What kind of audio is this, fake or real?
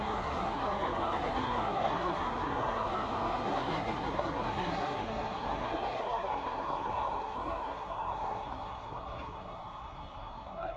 fake